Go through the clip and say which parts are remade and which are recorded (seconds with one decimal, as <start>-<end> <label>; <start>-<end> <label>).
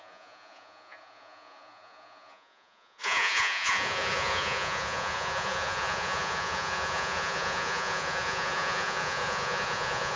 0.0-10.2 remade